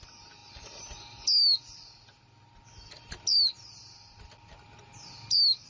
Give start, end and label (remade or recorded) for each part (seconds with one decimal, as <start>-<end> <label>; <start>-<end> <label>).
0.0-5.7 recorded